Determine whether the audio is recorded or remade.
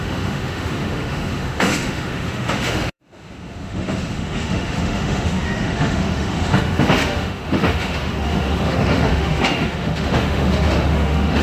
remade